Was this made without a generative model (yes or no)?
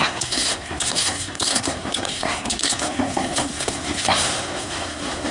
no